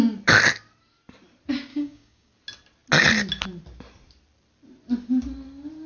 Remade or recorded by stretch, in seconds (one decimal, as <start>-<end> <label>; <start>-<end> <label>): 0.0-1.7 recorded; 1.7-2.3 remade; 2.3-5.9 recorded